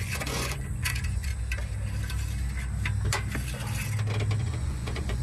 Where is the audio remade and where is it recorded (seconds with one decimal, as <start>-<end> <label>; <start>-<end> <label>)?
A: 0.0-1.3 remade; 1.3-4.4 recorded; 4.4-5.2 remade